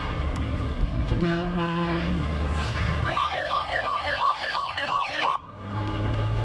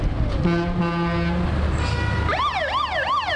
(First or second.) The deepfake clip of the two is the first